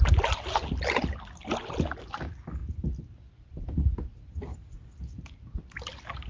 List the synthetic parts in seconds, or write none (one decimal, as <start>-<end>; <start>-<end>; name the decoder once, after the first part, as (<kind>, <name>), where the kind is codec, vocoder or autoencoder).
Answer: none

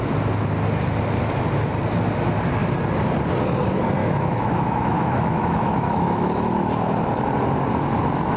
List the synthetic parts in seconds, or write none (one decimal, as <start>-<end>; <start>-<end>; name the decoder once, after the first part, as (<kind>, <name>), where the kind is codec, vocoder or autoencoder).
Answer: 4.0-6.5 (autoencoder, DAC-VAE)

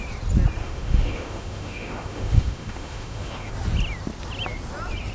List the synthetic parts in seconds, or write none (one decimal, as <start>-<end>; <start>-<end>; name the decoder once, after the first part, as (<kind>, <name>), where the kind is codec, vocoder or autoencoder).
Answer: 0.6-3.5 (autoencoder, DAC-VAE)

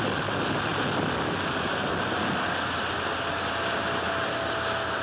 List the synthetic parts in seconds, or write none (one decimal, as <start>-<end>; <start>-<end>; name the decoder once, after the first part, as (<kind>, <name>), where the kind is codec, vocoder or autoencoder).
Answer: none

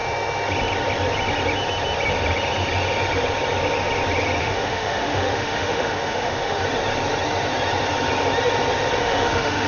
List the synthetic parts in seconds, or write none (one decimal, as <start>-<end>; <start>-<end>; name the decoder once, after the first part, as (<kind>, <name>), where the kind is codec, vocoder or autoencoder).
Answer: 4.4-6.6 (autoencoder, DAC-VAE); 9.0-9.7

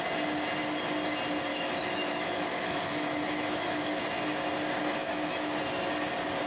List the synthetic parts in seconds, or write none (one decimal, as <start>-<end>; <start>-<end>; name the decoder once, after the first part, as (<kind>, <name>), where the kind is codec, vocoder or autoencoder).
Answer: 1.5-4.0 (autoencoder, DAC-VAE); 5.0-5.6